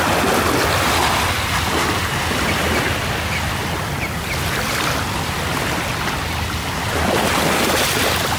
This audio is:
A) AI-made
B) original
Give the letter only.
B